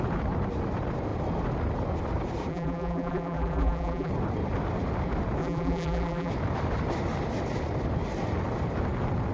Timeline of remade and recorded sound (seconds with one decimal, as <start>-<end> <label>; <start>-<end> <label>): 0.0-2.5 recorded; 2.5-4.1 remade; 4.1-5.4 recorded; 5.4-6.3 remade; 6.3-9.3 recorded